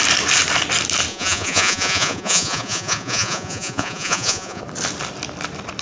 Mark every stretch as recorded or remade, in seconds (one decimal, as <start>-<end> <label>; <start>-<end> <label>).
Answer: 0.0-1.1 recorded; 1.1-4.6 remade; 4.6-5.8 recorded